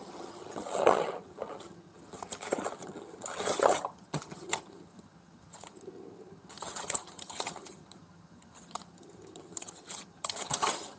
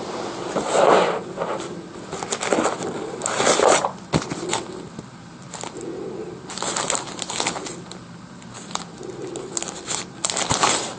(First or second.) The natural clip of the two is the second